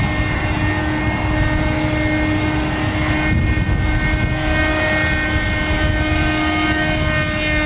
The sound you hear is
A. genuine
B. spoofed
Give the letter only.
A